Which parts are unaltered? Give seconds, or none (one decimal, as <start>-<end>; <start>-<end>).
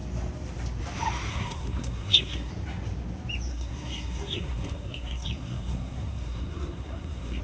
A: 0.0-1.3; 2.5-3.5